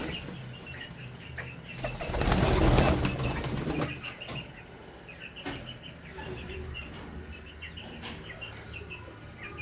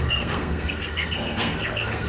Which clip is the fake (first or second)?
second